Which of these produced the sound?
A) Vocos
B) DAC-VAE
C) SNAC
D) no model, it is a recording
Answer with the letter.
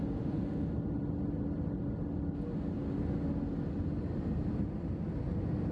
D